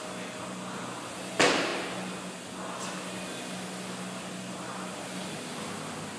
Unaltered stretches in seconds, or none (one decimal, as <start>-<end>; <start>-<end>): 0.0-6.2